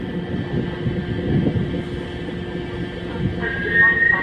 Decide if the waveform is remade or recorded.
recorded